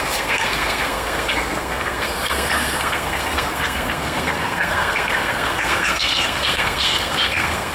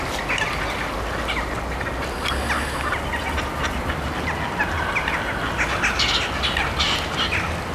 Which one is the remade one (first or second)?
first